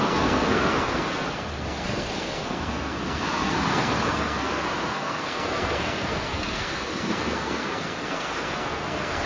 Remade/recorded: remade